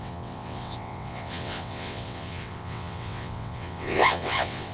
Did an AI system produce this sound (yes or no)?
yes